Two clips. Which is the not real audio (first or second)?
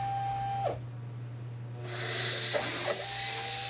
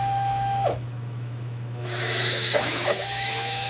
second